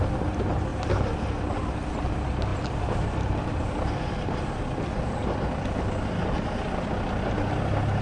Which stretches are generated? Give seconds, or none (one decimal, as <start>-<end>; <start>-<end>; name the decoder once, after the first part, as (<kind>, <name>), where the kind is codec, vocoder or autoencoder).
2.5-3.6 (vocoder, BigVGAN v2)